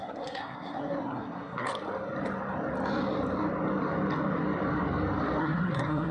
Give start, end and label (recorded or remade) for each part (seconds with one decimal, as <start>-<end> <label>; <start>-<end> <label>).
0.0-1.7 remade; 1.7-5.4 recorded; 5.4-6.1 remade